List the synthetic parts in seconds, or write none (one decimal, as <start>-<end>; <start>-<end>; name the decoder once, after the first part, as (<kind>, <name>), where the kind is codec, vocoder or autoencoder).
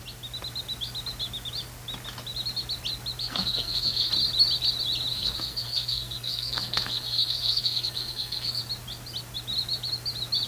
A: 3.2-4.1 (codec, SNAC); 5.1-8.6